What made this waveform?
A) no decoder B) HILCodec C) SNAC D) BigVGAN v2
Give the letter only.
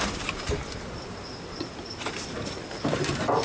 A